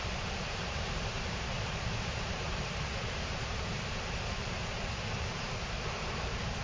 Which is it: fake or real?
fake